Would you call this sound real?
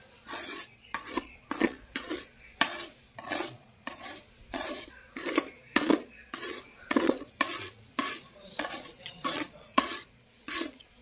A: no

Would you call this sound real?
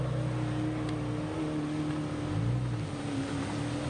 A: yes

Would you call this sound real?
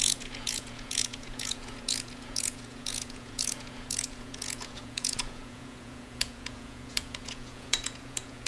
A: no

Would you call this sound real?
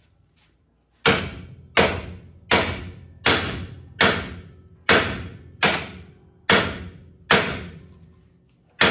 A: yes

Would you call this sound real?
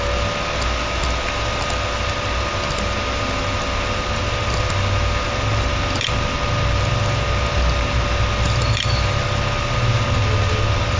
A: yes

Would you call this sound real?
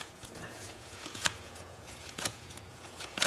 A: no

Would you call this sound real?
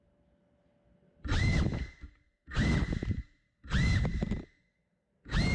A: yes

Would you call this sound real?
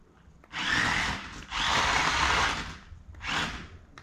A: yes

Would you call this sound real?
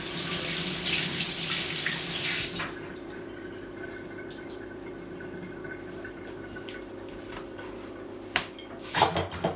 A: yes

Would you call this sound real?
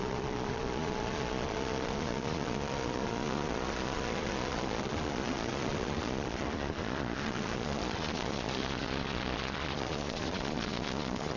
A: no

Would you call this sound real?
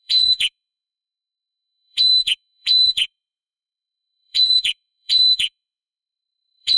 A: no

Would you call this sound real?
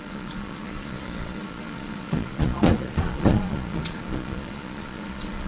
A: no